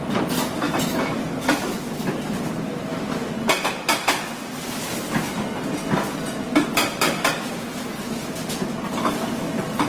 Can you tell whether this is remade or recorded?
recorded